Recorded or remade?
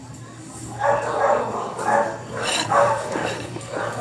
remade